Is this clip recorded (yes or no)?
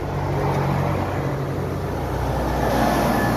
yes